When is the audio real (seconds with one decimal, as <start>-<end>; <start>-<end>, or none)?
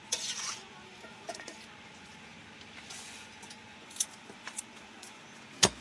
2.3-2.9